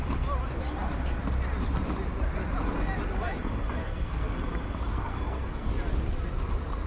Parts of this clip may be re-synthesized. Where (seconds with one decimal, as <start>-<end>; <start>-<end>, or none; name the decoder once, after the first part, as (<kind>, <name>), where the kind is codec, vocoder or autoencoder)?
3.8-4.4 (codec, SNAC); 4.9-5.7